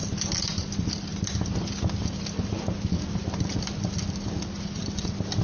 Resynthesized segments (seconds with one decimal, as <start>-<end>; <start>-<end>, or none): none